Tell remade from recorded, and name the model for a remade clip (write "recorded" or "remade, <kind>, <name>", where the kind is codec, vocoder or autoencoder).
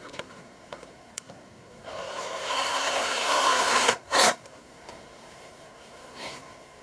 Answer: remade, codec, SNAC